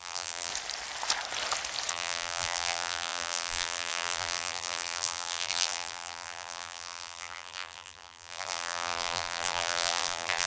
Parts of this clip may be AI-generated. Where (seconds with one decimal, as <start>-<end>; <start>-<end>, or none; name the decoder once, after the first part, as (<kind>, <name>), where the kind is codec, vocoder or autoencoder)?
0.0-0.5 (vocoder, BigVGAN v2); 1.9-10.5